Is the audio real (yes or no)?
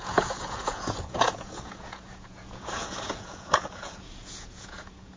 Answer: no